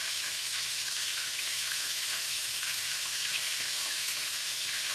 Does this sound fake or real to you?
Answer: fake